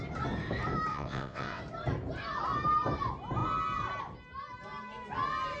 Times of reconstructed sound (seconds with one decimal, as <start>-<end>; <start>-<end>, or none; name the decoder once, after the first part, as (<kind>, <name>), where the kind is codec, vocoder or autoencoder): 0.9-1.6 (vocoder, WaveNeXt)